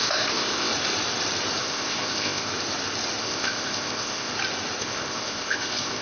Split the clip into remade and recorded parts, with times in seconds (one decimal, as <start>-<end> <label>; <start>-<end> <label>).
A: 0.0-0.7 remade; 0.7-1.6 recorded; 1.6-2.5 remade; 2.5-3.2 recorded; 3.2-4.3 remade; 4.3-4.8 recorded; 4.8-6.0 remade